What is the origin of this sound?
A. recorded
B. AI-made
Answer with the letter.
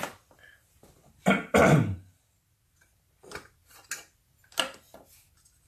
A